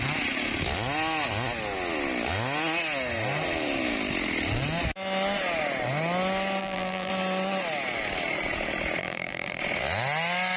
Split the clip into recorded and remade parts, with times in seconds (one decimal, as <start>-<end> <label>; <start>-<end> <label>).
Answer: 0.0-6.6 recorded; 6.6-7.1 remade; 7.1-9.0 recorded; 9.0-9.6 remade; 9.6-10.6 recorded